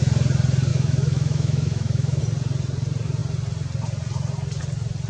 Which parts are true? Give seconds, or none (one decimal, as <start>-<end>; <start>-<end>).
0.0-0.7; 2.2-5.1